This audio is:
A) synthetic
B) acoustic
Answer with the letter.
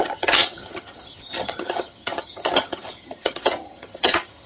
A